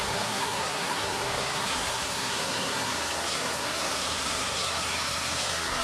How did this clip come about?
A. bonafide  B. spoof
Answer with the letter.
B